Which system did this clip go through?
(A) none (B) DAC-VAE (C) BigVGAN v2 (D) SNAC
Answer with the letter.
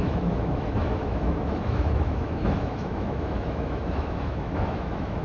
B